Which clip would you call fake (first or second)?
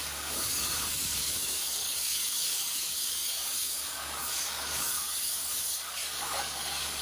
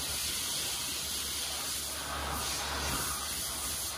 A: first